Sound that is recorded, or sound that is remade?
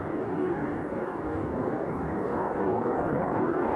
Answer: remade